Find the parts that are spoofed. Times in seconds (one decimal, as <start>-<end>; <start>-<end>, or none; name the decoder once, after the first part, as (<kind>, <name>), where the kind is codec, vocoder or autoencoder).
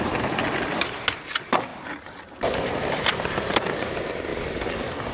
none